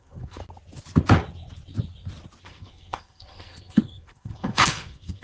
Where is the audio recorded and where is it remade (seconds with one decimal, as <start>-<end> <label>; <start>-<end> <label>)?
0.0-0.4 remade; 0.4-2.4 recorded; 2.4-5.2 remade